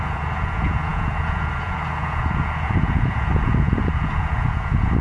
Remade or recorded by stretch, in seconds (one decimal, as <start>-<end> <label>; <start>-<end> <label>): 0.0-5.0 remade